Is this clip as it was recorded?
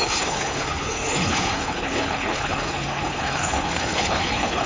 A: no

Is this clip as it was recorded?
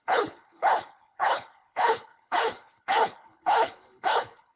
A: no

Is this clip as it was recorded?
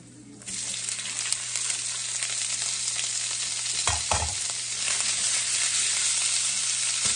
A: yes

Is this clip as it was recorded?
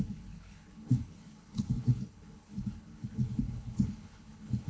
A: no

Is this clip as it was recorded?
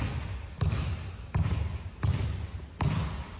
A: yes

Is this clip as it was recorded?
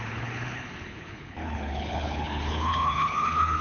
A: no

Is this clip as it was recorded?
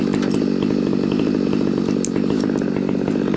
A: yes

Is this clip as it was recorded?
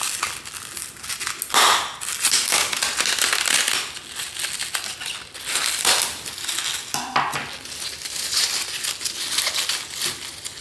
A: yes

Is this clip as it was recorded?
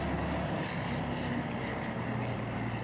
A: yes